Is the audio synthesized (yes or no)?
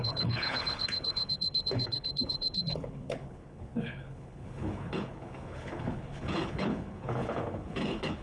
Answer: yes